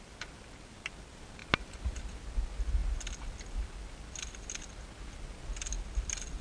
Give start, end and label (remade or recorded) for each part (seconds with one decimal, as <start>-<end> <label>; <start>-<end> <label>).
0.0-6.4 recorded